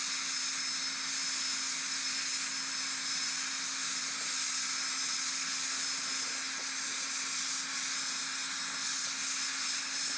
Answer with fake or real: real